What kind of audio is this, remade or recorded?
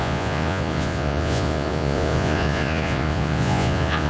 remade